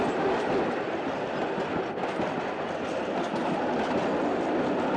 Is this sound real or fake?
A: real